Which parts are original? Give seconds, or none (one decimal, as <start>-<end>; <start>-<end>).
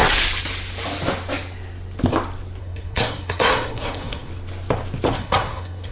0.0-2.6; 4.3-5.1